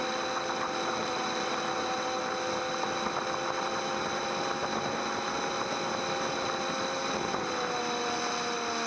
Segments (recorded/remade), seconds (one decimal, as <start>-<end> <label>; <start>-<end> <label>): 0.0-8.9 recorded